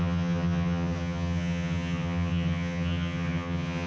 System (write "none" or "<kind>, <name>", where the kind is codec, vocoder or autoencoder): vocoder, HiFi-GAN